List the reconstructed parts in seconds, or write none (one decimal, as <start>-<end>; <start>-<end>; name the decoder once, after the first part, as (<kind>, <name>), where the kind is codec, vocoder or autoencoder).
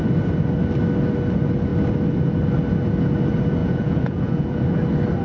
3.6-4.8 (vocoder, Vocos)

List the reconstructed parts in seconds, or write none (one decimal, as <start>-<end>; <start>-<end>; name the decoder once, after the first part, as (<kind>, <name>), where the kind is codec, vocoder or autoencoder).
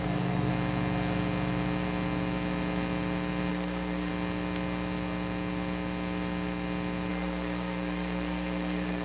0.0-0.5 (codec, SNAC); 3.5-4.1; 7.1-9.0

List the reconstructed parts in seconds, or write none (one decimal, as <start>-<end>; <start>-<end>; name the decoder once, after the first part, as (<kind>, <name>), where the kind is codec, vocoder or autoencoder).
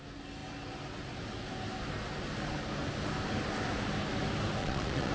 4.6-5.1 (vocoder, Vocos)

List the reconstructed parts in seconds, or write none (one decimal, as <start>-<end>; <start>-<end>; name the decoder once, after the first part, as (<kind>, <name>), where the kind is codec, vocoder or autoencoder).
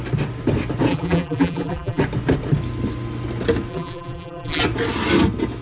0.9-2.0 (vocoder, BigVGAN v2); 3.7-4.6